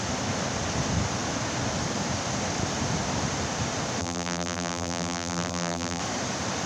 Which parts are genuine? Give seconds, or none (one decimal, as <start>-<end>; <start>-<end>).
0.0-4.0; 6.0-6.7